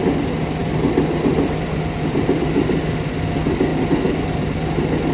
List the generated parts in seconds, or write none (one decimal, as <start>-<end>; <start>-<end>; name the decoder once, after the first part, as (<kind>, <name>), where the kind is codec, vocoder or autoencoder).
0.6-2.6 (vocoder, BigVGAN v2)